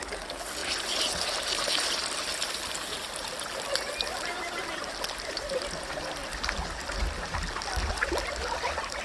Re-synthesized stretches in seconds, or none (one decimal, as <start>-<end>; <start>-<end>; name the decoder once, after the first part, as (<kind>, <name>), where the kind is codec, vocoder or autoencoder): none